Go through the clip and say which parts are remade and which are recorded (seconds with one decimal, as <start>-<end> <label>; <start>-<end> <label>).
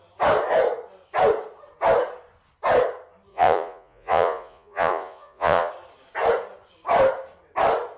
0.0-3.3 recorded; 3.3-5.7 remade; 5.7-8.0 recorded